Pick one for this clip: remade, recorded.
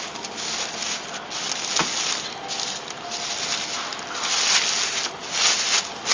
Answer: recorded